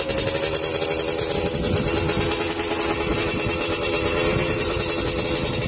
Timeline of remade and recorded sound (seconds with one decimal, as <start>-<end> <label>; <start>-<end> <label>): 0.0-3.1 recorded; 3.1-4.8 remade; 4.8-5.7 recorded